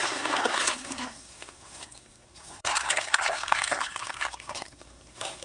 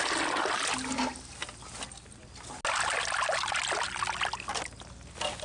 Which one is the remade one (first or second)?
first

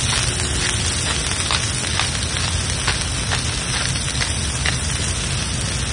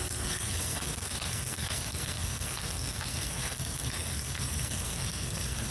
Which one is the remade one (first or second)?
second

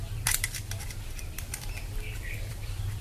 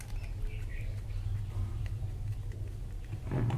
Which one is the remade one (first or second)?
first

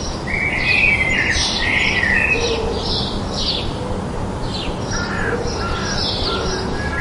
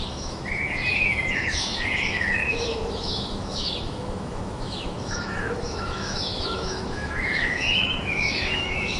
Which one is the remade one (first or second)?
second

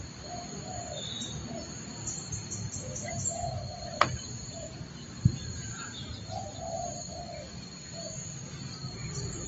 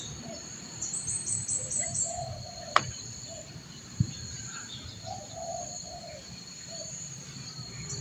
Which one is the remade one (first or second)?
second